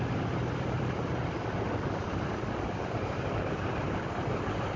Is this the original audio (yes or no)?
no